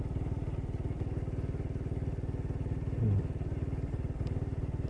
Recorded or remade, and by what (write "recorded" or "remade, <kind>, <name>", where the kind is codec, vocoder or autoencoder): recorded